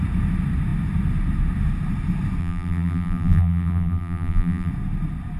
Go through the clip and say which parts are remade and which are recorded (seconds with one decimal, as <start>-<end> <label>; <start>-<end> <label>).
0.0-2.4 recorded; 2.4-4.7 remade; 4.7-5.4 recorded